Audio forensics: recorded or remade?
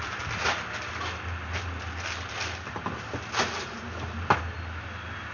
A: recorded